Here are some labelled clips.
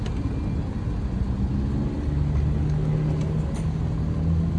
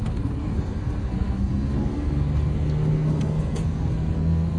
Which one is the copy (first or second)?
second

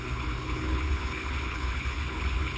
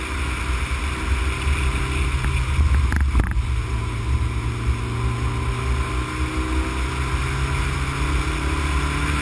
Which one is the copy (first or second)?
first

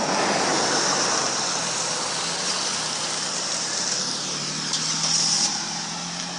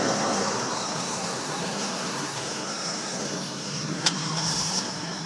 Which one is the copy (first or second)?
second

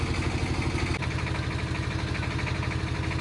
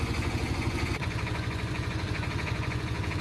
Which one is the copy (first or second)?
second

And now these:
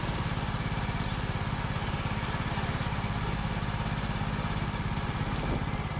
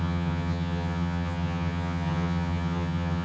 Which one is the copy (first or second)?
second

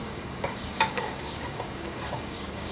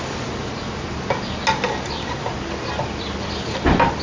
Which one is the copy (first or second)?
first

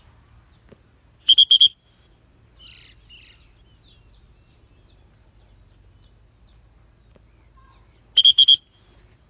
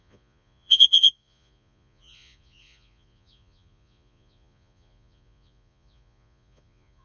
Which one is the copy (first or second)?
second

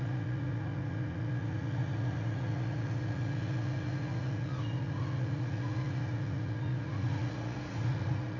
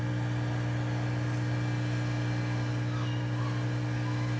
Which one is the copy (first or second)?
first